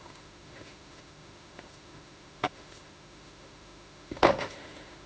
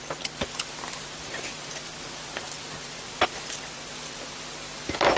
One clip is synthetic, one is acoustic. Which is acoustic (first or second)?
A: second